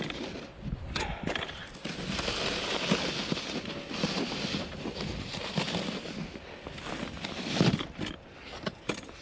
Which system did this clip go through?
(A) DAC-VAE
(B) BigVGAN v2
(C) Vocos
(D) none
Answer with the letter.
D